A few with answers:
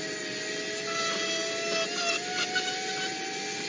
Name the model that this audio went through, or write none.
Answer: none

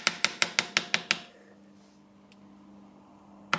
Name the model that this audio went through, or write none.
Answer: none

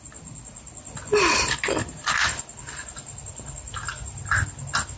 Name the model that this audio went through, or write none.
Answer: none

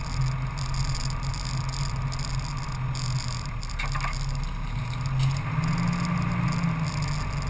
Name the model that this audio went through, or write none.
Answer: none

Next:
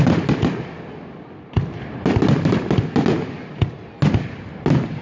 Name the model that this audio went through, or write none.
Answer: none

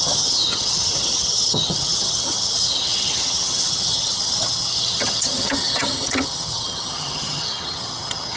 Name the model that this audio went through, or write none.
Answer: vocoder, HiFi-GAN